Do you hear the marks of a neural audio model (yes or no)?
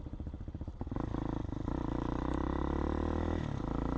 no